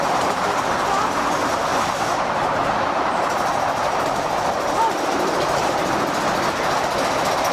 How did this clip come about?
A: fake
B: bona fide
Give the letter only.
B